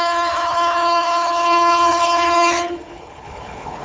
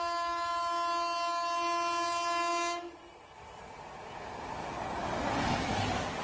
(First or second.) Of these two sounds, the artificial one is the first